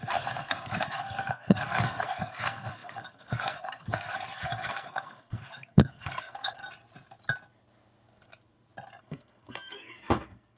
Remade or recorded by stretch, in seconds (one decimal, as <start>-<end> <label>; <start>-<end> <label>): 0.0-6.6 remade; 6.6-9.0 recorded; 9.0-10.6 remade